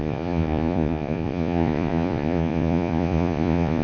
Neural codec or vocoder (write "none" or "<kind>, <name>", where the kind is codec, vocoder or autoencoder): vocoder, Vocos